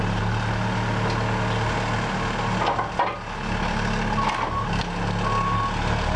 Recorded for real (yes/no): yes